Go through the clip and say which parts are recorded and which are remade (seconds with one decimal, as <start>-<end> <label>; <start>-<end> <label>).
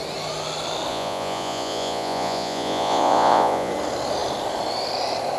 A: 0.0-0.9 recorded; 0.9-3.7 remade; 3.7-5.4 recorded